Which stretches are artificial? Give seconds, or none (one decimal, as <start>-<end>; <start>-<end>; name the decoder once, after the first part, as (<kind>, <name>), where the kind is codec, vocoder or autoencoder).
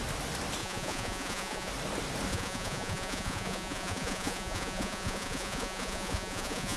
0.6-1.7 (vocoder, Vocos); 2.3-6.8